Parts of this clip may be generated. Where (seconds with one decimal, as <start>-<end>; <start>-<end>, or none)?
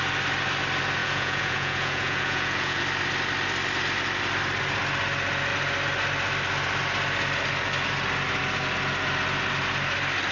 1.0-2.8